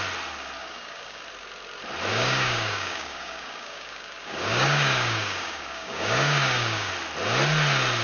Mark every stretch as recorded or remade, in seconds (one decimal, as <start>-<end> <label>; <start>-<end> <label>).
0.0-0.6 recorded; 0.6-1.2 remade; 1.2-2.1 recorded; 2.1-6.9 remade; 6.9-8.0 recorded